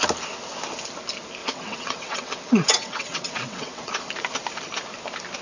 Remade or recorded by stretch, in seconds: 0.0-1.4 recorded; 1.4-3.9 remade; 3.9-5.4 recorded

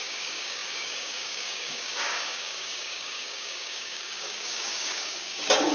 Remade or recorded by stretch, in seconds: 0.0-5.7 remade

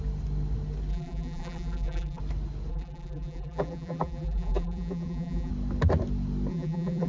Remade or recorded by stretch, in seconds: 0.0-0.9 recorded; 0.9-2.2 remade; 2.2-2.7 recorded; 2.7-5.5 remade; 5.5-6.5 recorded; 6.5-7.1 remade

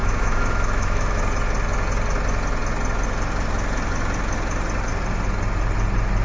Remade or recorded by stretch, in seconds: 0.0-1.2 remade; 1.2-6.2 recorded

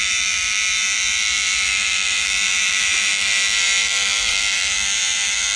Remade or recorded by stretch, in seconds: 0.0-5.6 remade

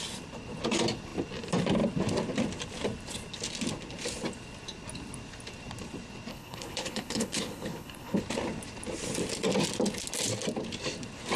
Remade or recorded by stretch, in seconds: 0.0-6.3 recorded; 6.3-8.2 remade; 8.2-11.4 recorded

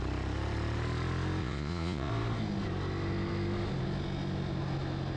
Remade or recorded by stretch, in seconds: 0.0-1.4 recorded; 1.4-2.1 remade; 2.1-5.2 recorded

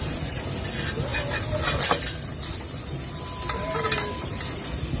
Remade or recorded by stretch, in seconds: 0.0-5.0 recorded